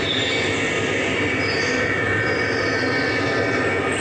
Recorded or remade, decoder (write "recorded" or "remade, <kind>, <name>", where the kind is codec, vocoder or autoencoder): recorded